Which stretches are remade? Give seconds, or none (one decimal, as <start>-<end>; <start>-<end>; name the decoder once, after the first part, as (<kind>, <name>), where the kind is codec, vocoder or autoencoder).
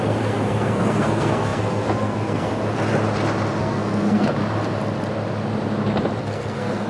0.0-2.5 (codec, SNAC); 3.6-4.4; 6.2-6.9